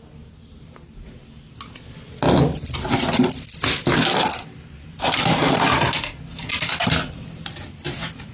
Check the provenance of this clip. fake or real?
real